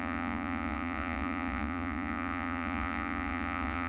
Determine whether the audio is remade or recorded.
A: remade